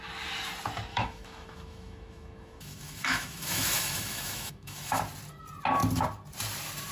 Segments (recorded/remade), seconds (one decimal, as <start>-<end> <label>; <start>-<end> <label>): 0.0-0.9 recorded; 0.9-5.0 remade; 5.0-6.9 recorded